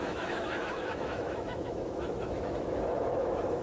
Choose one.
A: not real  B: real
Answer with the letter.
A